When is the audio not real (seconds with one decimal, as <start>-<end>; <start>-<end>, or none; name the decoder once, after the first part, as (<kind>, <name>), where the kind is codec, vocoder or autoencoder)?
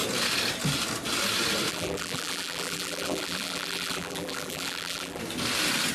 1.7-5.2 (vocoder, BigVGAN v2)